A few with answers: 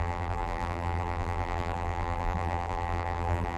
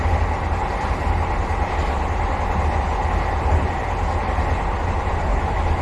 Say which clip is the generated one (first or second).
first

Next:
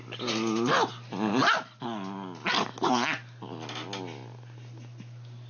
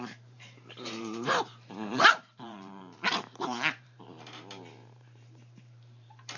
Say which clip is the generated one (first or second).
second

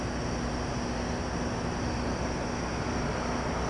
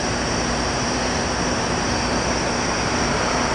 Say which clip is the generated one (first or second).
second